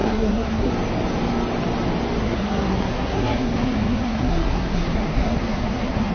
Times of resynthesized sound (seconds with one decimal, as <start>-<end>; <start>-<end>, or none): 0.0-0.7; 2.2-6.1